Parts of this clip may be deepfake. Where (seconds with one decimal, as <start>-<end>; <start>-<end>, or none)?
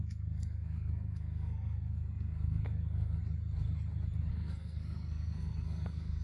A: 0.0-3.2; 4.3-6.2